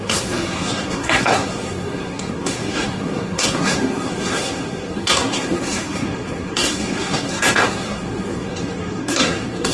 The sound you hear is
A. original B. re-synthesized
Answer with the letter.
B